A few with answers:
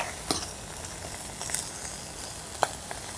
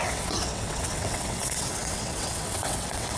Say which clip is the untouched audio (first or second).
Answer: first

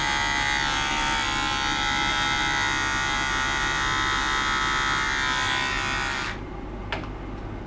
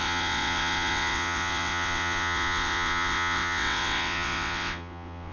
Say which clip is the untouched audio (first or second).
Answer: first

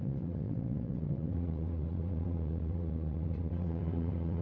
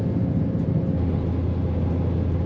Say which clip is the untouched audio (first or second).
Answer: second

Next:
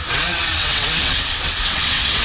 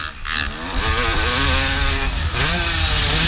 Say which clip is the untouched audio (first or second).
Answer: second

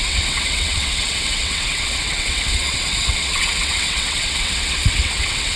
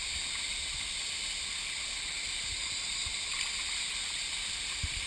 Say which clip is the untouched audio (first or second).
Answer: second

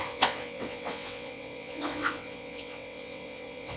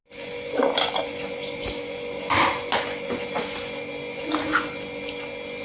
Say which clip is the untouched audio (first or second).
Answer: second